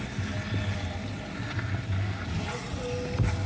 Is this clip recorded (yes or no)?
yes